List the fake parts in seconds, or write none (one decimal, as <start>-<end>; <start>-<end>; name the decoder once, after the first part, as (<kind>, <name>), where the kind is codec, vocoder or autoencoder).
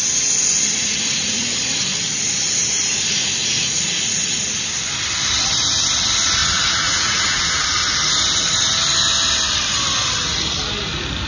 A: 0.8-1.8 (vocoder, Vocos); 2.8-4.6; 6.4-8.1